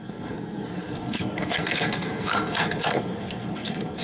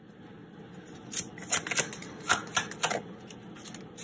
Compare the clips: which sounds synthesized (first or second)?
first